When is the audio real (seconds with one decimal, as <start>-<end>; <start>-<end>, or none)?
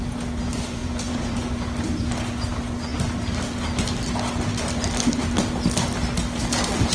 0.0-0.8; 1.3-6.9